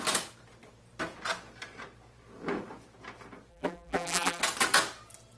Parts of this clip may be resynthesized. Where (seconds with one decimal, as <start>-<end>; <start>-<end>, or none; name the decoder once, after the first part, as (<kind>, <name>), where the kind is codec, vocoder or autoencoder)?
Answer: 3.5-4.4 (vocoder, BigVGAN v2)